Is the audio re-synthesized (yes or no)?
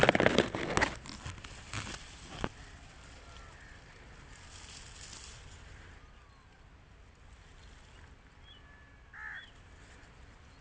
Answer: no